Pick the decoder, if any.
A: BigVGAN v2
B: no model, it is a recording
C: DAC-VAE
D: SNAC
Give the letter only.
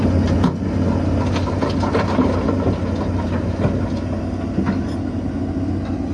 B